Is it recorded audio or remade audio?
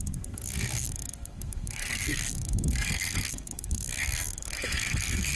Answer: remade